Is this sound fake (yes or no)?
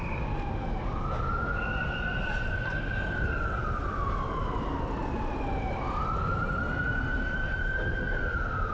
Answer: no